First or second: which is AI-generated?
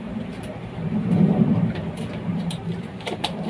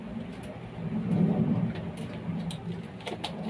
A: first